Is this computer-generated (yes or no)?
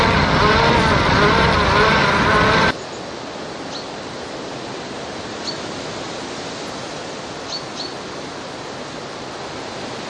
no